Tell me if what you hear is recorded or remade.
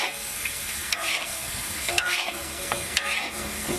remade